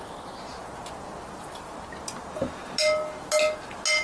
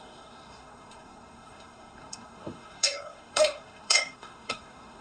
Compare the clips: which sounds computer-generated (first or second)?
second